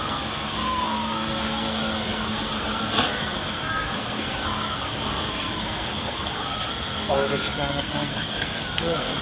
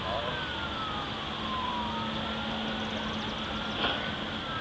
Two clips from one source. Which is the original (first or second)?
second